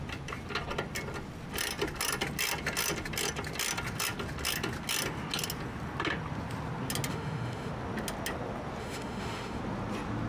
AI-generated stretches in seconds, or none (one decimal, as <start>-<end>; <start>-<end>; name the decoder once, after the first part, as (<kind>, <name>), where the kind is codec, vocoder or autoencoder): 7.1-7.7 (autoencoder, DAC-VAE); 8.8-9.6